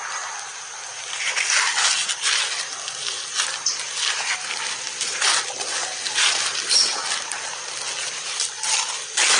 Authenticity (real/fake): real